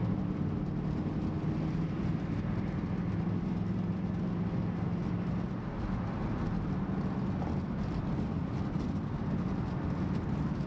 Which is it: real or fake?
real